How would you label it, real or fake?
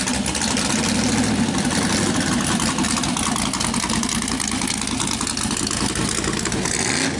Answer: real